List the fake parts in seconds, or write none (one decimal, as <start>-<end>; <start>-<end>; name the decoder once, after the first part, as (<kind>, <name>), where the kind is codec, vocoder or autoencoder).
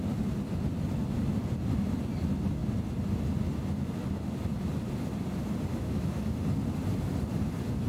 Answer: 5.7-6.2 (autoencoder, DAC-VAE)